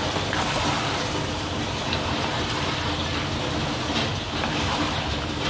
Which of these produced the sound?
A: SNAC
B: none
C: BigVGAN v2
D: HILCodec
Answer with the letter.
B